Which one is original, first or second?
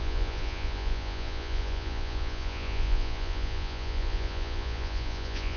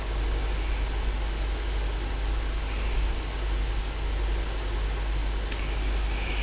second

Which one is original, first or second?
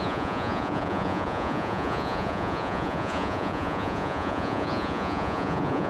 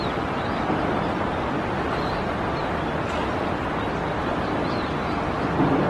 second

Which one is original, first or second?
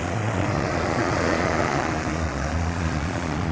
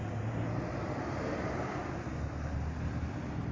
second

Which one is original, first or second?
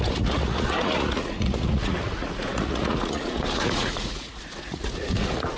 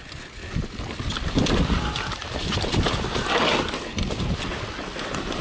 second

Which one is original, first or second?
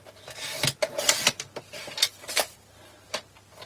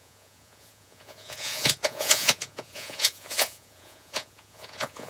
first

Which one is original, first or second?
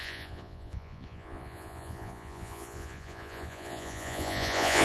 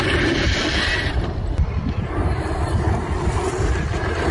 second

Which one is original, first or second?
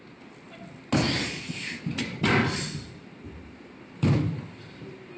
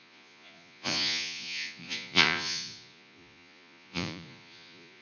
first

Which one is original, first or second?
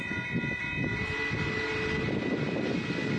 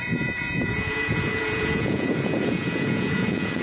first